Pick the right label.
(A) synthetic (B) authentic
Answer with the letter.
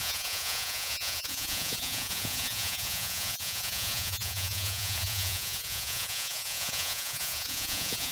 A